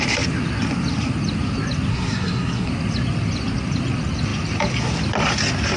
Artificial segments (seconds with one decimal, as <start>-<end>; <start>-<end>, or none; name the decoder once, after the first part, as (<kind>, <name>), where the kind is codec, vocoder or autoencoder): 1.9-2.7 (codec, SNAC)

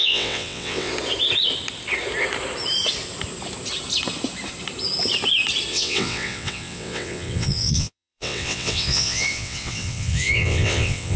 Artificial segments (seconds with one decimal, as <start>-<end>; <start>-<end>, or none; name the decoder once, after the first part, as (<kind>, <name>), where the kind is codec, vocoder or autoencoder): 0.0-0.9 (vocoder, WaveNeXt); 5.7-11.2

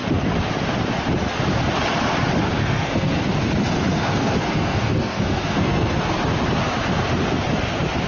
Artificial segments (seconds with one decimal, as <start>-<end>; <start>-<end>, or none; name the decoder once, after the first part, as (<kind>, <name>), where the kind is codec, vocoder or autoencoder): 2.6-3.2 (codec, SNAC); 3.9-6.1

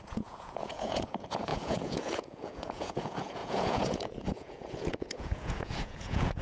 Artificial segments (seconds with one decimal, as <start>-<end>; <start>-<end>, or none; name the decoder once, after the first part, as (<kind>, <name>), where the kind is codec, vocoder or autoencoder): 0.0-6.4 (vocoder, Vocos)

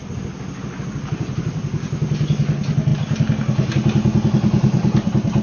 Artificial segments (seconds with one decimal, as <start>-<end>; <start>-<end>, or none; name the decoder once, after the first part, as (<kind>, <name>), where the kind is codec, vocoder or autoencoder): none

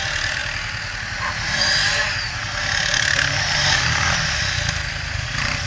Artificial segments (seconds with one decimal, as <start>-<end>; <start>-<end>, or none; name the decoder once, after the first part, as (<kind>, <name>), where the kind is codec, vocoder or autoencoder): none

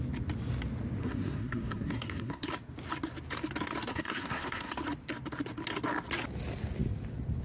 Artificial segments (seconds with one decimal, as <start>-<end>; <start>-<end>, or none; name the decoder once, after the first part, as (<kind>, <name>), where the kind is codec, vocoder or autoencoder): 1.0-2.5 (codec, SNAC); 3.9-4.7

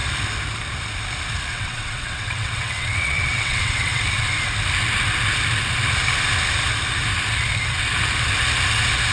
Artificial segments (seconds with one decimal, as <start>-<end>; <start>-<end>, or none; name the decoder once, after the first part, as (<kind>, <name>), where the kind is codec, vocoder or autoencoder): 1.5-4.0 (vocoder, WaveNeXt)